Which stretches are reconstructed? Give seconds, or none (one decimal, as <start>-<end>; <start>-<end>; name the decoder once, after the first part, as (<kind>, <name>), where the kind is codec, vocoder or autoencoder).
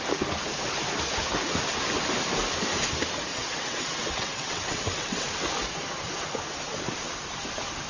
3.3-5.4 (vocoder, WaveNeXt)